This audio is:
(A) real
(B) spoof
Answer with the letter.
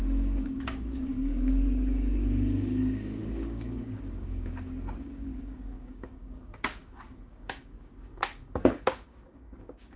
B